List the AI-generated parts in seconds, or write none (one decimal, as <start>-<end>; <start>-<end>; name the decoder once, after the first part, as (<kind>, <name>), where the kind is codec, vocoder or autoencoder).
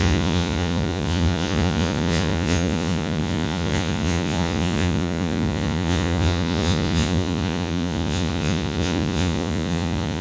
0.0-10.2 (vocoder, Vocos)